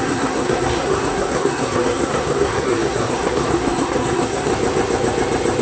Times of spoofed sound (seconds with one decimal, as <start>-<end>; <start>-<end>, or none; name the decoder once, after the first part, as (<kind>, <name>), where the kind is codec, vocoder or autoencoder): 0.0-4.5 (codec, SNAC)